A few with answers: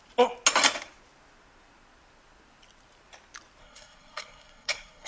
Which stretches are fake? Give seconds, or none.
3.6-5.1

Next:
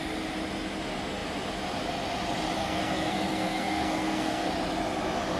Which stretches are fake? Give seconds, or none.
2.6-4.5

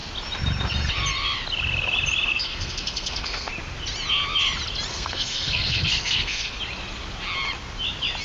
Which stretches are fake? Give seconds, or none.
2.3-3.5; 4.9-6.6

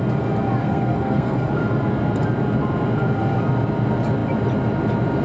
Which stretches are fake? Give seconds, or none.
0.6-1.5

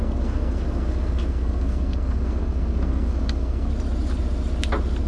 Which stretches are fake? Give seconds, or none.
0.0-3.7